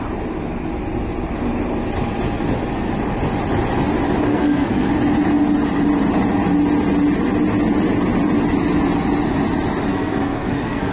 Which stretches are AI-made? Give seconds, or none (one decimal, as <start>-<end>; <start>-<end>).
4.3-4.9; 9.9-10.9